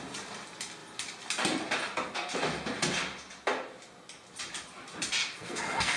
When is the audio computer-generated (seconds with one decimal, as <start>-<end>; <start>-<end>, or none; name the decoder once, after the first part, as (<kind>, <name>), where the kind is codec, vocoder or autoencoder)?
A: 5.2-6.0 (codec, SNAC)